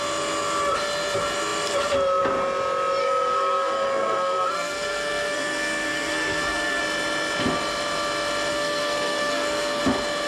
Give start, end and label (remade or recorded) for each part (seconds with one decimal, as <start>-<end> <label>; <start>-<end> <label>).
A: 0.0-3.0 recorded; 3.0-6.8 remade; 6.8-8.5 recorded; 8.5-9.8 remade; 9.8-10.3 recorded

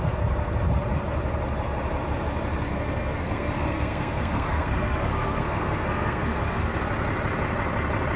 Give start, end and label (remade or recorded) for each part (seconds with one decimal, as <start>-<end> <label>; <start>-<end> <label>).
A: 0.0-2.7 recorded; 2.7-6.8 remade; 6.8-8.2 recorded

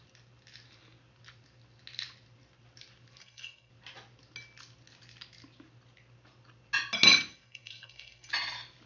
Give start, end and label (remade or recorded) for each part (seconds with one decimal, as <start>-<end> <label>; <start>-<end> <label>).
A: 0.0-3.2 recorded; 3.2-3.7 remade; 3.7-7.3 recorded; 7.3-8.3 remade; 8.3-8.9 recorded

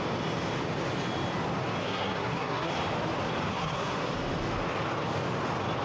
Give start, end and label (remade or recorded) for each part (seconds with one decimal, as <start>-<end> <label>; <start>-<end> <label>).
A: 0.0-1.8 recorded; 1.8-2.7 remade; 2.7-3.5 recorded; 3.5-4.1 remade; 4.1-5.8 recorded

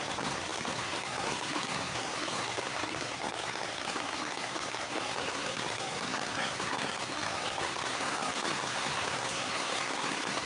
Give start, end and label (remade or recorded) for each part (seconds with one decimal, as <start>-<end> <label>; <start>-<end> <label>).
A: 0.0-10.5 remade

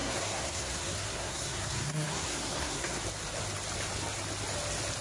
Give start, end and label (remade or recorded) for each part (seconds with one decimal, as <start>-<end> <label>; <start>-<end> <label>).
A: 0.0-3.0 remade; 3.0-5.0 recorded